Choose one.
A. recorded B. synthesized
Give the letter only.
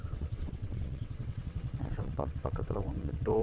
B